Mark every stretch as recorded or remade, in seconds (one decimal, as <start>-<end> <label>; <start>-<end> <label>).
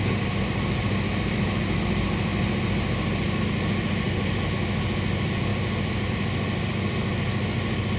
0.0-8.0 recorded